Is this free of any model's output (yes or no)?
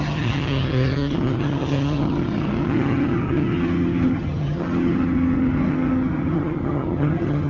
no